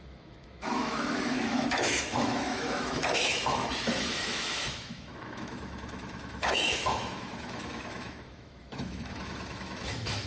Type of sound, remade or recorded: remade